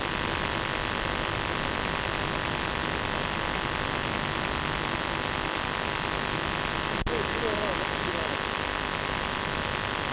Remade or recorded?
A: recorded